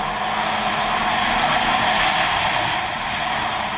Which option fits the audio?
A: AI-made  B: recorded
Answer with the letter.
B